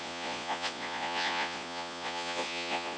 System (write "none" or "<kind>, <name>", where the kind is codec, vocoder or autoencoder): vocoder, Vocos